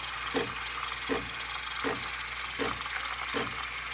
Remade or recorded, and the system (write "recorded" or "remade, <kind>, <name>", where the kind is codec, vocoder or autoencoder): recorded